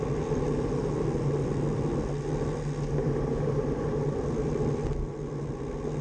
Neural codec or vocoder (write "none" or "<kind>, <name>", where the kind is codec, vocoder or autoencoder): none